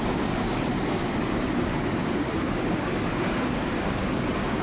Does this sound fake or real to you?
fake